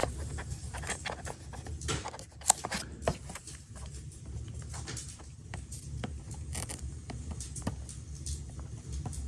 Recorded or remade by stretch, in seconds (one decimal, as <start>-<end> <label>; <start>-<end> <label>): 0.0-1.4 remade; 1.4-3.1 recorded; 3.1-7.6 remade; 7.6-9.3 recorded